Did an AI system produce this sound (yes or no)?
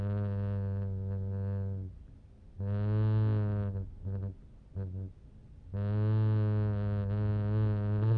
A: no